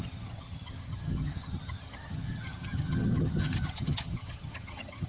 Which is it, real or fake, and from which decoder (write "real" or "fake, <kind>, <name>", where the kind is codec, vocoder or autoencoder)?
fake, vocoder, HiFi-GAN